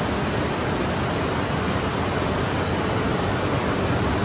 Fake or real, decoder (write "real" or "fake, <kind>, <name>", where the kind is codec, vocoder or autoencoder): real